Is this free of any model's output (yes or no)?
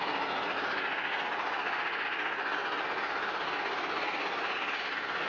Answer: yes